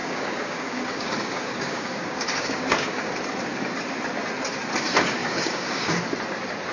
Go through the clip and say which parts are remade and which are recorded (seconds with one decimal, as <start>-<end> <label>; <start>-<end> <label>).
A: 0.0-3.1 remade; 3.1-5.2 recorded; 5.2-5.9 remade; 5.9-6.7 recorded